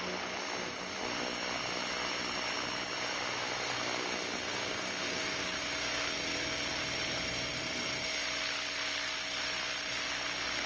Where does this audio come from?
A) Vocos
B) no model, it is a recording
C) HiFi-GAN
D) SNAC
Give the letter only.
B